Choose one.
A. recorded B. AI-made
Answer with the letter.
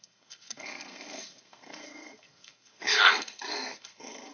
B